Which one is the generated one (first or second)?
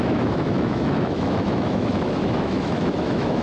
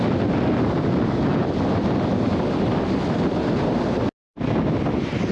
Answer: first